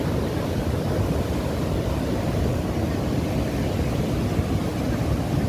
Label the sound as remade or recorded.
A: recorded